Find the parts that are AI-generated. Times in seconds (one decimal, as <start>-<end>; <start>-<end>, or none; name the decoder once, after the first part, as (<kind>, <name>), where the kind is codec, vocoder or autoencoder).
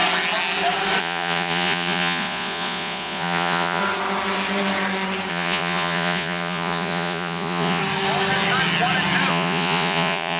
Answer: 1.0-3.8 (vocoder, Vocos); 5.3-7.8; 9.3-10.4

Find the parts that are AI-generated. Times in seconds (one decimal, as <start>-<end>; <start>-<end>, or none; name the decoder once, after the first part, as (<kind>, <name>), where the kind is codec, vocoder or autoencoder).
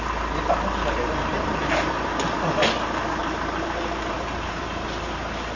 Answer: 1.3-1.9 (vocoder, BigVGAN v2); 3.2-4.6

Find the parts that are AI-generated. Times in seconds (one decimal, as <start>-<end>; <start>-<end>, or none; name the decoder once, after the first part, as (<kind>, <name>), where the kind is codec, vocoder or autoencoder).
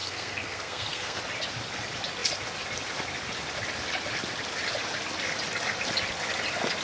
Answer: 0.0-1.2 (codec, SNAC)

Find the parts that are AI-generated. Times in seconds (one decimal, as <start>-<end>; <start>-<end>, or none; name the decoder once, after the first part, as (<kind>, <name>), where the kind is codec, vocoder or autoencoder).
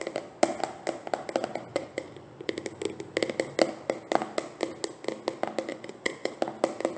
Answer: 1.7-2.5 (vocoder, Vocos); 5.7-6.3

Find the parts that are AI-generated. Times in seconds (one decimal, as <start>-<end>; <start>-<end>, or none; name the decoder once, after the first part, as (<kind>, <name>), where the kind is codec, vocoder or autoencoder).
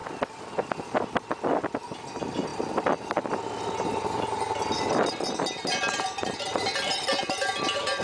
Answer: 5.7-8.0 (vocoder, BigVGAN v2)